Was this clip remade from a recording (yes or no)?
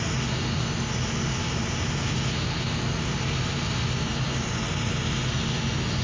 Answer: no